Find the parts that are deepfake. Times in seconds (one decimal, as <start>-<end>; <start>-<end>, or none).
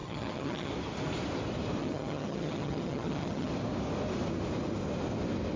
0.0-0.7; 1.8-3.5